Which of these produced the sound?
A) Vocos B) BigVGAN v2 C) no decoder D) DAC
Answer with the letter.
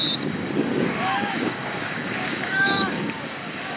D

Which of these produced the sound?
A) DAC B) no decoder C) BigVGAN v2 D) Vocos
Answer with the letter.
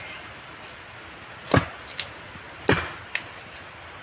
B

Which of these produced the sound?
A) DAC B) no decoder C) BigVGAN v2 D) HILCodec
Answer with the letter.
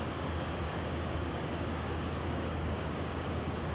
A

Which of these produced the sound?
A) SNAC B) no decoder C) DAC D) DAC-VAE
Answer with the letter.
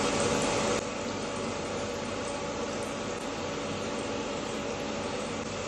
B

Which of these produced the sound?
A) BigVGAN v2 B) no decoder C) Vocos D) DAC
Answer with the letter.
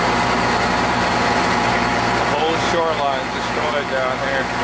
B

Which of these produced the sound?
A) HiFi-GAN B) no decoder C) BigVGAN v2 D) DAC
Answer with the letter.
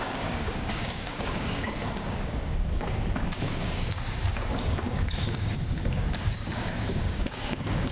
D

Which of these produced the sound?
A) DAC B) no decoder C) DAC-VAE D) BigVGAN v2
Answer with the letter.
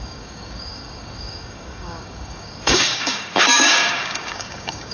A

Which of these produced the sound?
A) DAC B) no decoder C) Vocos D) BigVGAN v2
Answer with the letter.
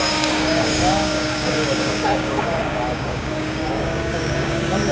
A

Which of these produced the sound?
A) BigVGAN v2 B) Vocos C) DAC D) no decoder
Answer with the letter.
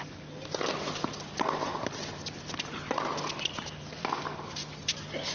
D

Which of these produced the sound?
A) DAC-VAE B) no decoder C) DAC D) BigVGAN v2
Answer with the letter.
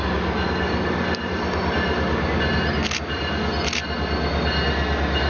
B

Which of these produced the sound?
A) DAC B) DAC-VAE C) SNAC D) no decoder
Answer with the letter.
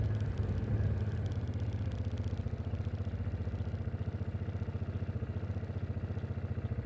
D